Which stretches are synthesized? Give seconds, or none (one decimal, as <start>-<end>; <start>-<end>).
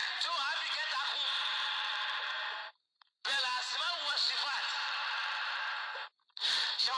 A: 0.0-7.0